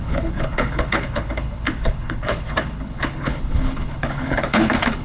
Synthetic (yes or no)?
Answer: yes